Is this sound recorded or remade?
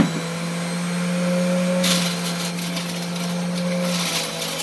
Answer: recorded